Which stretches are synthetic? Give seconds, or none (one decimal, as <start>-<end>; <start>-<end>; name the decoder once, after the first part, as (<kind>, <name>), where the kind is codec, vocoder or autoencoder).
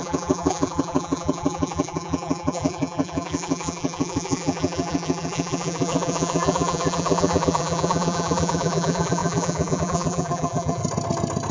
0.0-10.8 (vocoder, BigVGAN v2)